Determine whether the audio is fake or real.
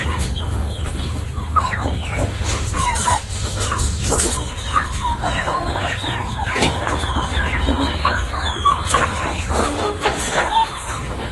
fake